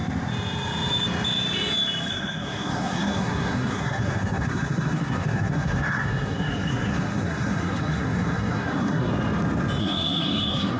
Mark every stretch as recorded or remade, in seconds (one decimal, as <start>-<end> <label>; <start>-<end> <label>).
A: 0.0-2.1 recorded; 2.1-9.1 remade; 9.1-9.8 recorded; 9.8-10.8 remade